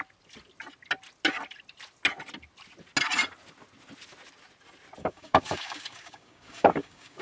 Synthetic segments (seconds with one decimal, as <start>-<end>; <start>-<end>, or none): 5.0-7.2